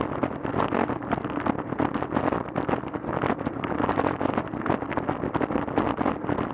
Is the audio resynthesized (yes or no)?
no